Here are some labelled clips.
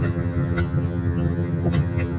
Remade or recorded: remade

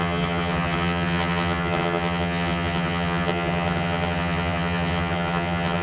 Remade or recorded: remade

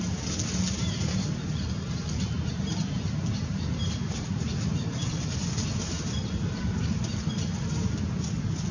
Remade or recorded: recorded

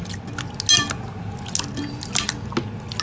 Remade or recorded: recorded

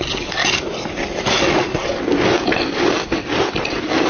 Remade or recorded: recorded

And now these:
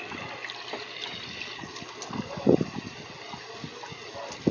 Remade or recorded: recorded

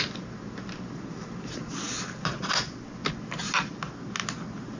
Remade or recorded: recorded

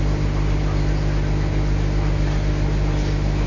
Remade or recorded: recorded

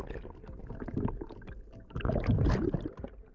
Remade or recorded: recorded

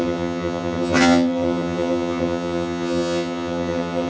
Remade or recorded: remade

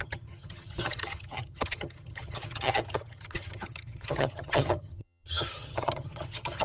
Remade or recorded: remade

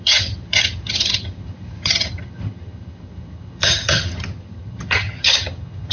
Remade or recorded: remade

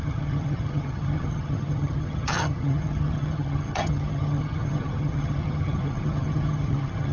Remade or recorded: remade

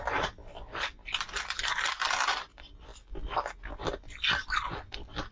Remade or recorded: recorded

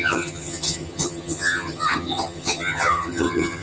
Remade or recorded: remade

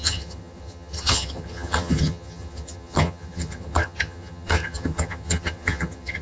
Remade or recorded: remade